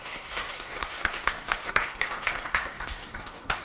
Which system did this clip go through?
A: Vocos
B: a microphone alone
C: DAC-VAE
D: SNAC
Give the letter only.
D